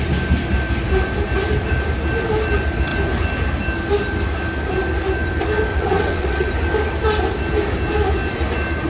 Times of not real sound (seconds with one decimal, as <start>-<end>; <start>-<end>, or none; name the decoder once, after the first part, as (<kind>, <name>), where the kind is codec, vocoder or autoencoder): 5.7-6.5 (vocoder, WaveNeXt)